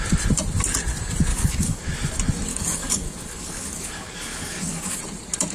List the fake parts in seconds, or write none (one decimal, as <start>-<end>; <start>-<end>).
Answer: 1.3-1.9; 2.5-5.0